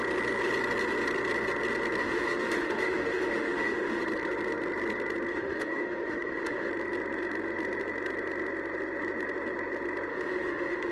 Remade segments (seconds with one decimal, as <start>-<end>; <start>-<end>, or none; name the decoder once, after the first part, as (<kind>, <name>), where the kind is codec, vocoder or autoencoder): 2.0-4.0 (autoencoder, DAC-VAE); 5.3-6.7; 10.1-10.9